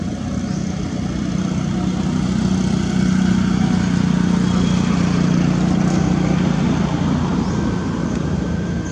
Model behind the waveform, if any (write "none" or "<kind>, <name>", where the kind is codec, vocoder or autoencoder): none